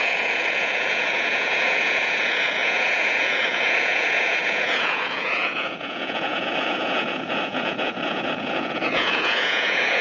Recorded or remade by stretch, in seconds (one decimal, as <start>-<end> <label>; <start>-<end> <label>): 0.0-10.0 remade